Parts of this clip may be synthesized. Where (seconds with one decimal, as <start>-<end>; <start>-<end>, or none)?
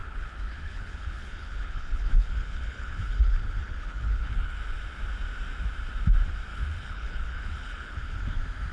0.0-4.6; 6.5-8.2